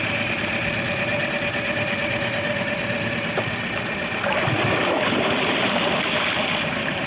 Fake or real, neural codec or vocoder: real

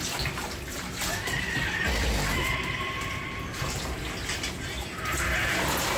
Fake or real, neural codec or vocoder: real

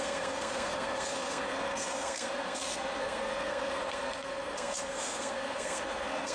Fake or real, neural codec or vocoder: fake, codec, SNAC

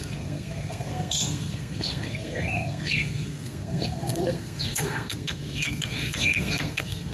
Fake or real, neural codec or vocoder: fake, codec, SNAC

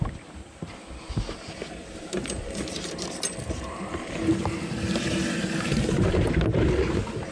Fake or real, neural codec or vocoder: real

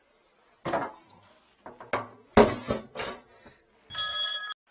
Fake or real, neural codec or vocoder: real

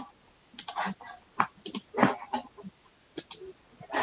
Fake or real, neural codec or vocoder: real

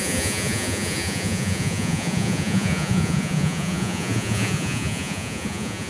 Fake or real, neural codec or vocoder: fake, vocoder, Vocos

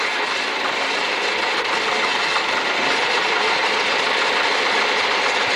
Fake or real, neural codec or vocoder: fake, vocoder, BigVGAN v2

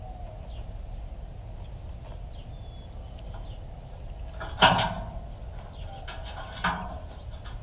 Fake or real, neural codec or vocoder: real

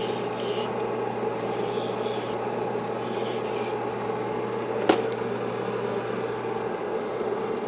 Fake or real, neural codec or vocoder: real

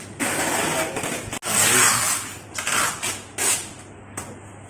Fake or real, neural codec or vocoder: real